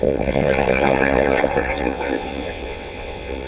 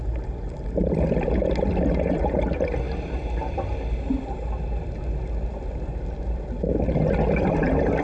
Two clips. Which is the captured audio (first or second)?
second